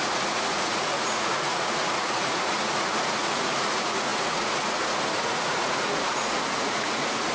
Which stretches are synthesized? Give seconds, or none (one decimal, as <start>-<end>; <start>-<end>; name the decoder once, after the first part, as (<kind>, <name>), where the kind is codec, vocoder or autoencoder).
0.0-7.3 (vocoder, Vocos)